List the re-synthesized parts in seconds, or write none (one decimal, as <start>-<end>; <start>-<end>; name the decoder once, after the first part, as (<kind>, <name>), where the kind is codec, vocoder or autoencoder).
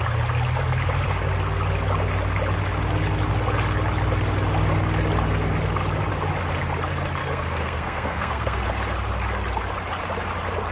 7.2-8.6 (codec, SNAC)